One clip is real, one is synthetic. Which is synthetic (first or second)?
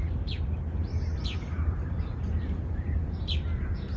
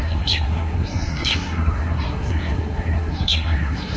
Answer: second